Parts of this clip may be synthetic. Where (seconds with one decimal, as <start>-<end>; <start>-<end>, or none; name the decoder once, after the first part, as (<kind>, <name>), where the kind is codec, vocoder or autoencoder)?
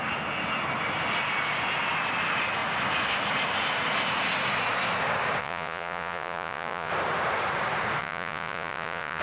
5.4-6.9 (vocoder, Vocos); 8.0-9.2